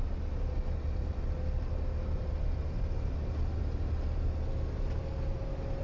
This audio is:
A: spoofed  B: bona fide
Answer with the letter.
B